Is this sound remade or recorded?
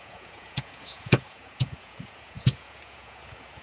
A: remade